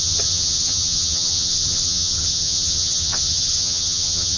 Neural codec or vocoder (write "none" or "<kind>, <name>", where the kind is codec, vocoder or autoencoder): vocoder, HiFi-GAN